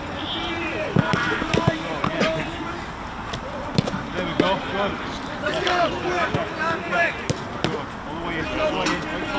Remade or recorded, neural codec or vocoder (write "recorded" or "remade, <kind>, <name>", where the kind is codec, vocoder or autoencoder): recorded